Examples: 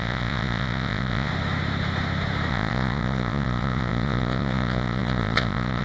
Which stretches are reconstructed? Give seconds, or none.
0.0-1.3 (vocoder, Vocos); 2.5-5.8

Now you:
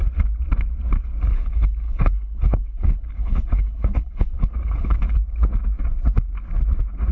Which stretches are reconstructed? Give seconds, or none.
1.3-5.0 (codec, HILCodec)

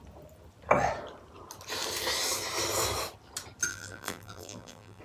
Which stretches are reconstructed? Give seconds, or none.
3.7-5.0 (vocoder, BigVGAN v2)

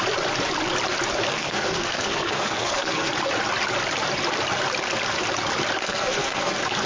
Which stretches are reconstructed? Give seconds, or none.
1.2-3.1 (codec, SNAC); 5.8-6.5